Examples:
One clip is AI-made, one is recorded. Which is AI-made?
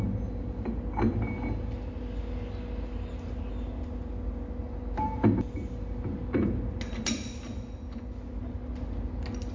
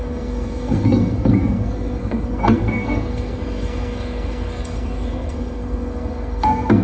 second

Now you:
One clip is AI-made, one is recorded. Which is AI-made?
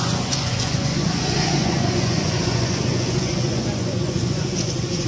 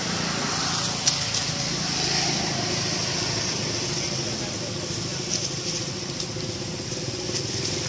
first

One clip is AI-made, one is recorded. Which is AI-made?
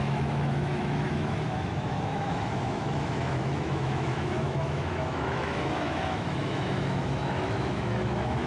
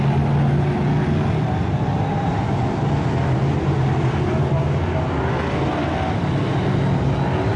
first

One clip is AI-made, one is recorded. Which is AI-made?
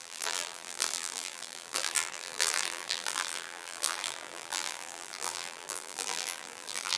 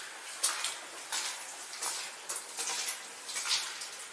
first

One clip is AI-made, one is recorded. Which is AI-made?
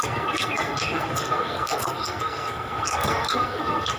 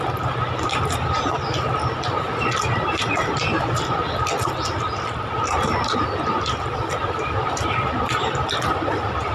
first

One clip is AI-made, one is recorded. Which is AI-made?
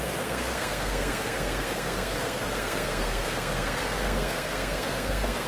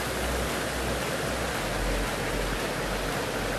first